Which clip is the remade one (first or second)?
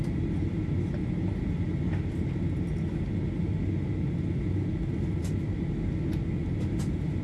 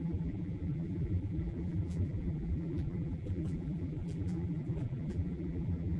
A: second